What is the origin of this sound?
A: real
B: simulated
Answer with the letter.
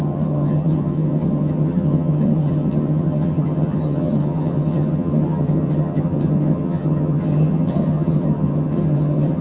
B